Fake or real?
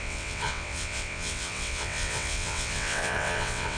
fake